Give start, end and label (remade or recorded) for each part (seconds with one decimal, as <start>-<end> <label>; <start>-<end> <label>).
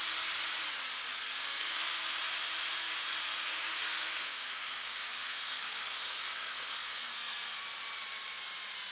0.0-1.1 recorded; 1.1-2.2 remade; 2.2-3.2 recorded; 3.2-7.6 remade; 7.6-8.9 recorded